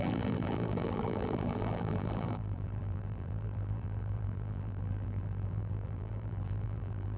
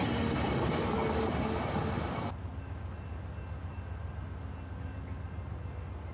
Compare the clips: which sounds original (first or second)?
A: second